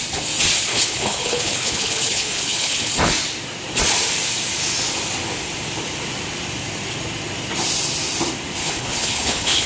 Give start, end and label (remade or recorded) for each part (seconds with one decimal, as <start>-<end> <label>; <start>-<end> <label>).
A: 0.0-0.7 recorded; 0.7-2.9 remade; 2.9-8.6 recorded; 8.6-9.7 remade